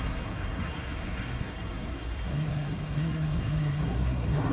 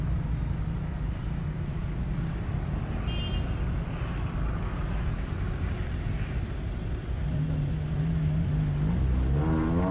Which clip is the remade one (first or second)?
first